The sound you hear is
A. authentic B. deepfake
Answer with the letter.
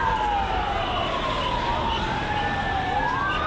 A